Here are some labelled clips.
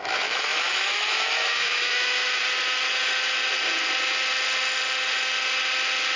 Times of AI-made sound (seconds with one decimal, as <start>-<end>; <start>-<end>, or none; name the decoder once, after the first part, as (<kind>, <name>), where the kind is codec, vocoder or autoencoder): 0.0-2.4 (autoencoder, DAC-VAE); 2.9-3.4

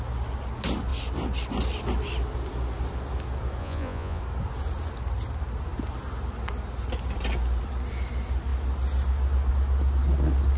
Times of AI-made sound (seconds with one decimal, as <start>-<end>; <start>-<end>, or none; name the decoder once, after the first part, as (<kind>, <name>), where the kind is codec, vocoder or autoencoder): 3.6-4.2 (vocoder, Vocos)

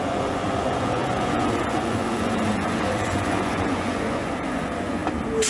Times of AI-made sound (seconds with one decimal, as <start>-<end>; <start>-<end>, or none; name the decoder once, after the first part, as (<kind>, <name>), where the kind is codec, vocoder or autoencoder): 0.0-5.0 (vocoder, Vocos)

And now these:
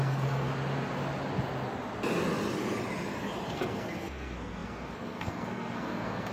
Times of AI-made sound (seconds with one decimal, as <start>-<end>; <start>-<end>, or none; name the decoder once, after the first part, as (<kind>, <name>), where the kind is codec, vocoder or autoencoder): 0.0-0.5 (codec, SNAC); 3.5-6.3

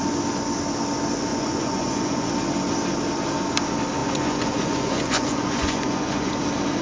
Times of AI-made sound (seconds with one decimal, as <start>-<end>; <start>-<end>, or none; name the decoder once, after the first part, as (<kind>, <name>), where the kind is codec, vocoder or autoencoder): 1.3-2.3 (vocoder, Vocos); 4.0-6.3